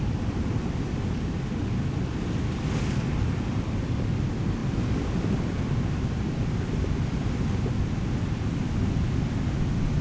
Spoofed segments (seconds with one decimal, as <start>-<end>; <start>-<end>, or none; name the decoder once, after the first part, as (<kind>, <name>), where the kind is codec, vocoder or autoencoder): none